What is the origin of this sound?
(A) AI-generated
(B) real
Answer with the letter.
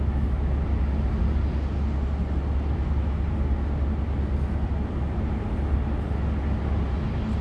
B